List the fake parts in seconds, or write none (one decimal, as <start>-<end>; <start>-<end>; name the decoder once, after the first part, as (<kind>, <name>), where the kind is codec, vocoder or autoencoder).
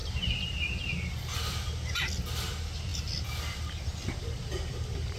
0.0-0.7 (vocoder, BigVGAN v2)